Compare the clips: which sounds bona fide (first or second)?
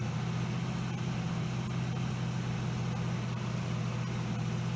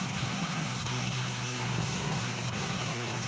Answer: first